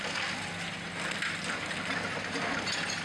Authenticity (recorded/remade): recorded